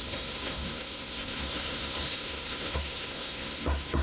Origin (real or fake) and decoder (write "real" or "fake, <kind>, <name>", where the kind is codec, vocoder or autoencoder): fake, codec, SNAC